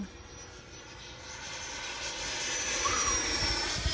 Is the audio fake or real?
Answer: real